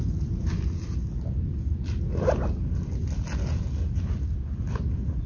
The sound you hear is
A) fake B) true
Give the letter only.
B